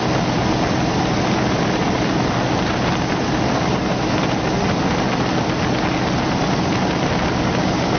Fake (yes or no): no